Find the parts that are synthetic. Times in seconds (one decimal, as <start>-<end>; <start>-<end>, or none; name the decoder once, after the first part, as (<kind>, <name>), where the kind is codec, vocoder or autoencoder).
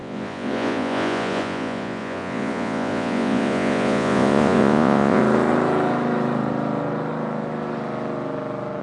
0.0-5.2 (vocoder, Vocos)